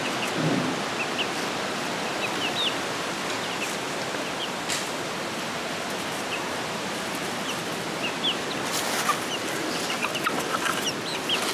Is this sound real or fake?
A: real